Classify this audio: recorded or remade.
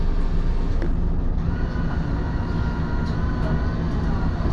recorded